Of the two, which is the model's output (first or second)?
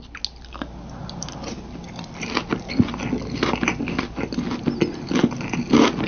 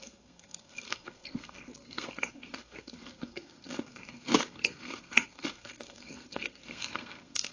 second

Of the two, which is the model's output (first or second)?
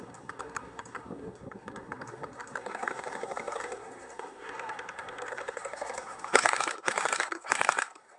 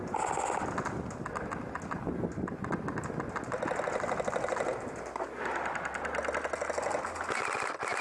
first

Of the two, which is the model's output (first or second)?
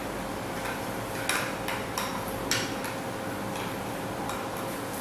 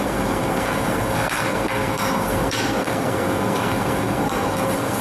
second